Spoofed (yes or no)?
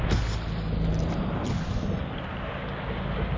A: no